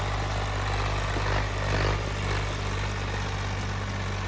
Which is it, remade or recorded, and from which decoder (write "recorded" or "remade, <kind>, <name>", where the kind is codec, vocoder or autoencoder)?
recorded